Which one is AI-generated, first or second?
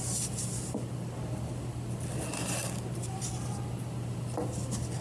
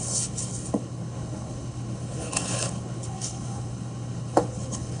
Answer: second